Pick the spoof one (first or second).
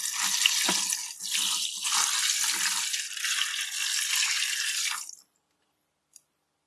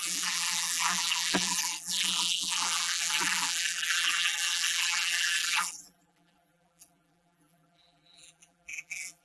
second